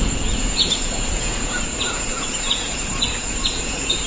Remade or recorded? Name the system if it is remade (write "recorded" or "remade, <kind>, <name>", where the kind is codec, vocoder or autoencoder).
remade, vocoder, Vocos